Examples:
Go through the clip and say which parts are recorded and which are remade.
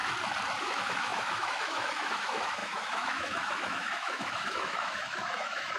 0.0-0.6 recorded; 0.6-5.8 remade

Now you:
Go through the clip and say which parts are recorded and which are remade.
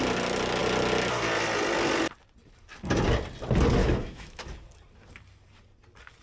0.0-3.8 recorded; 3.8-4.4 remade; 4.4-6.2 recorded